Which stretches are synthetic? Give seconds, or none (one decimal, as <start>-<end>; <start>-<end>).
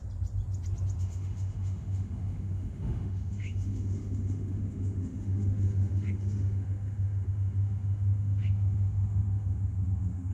1.0-10.3